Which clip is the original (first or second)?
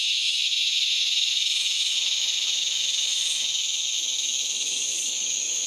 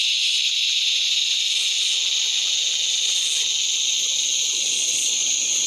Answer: second